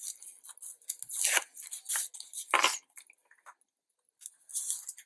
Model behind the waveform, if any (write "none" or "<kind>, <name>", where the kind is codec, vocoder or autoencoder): none